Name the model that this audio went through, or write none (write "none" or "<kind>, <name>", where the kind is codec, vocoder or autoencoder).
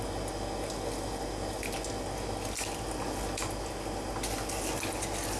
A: none